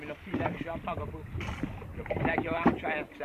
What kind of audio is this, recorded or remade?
recorded